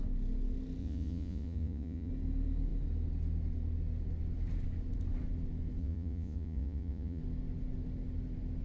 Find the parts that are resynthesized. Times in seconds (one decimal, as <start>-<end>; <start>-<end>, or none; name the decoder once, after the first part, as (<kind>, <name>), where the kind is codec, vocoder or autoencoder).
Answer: 0.8-2.1 (vocoder, Vocos); 5.8-7.2